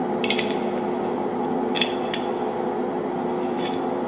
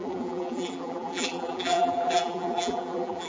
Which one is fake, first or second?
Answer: second